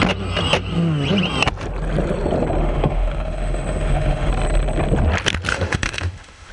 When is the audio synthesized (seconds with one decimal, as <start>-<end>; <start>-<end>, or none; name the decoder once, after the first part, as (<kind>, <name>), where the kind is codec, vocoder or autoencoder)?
2.6-4.3 (autoencoder, DAC-VAE); 5.5-6.5